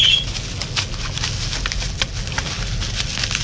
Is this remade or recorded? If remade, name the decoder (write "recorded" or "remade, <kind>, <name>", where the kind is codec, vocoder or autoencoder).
recorded